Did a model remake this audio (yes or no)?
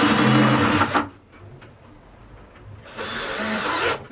no